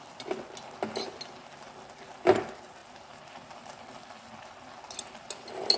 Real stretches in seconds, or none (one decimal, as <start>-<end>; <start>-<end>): 0.0-5.8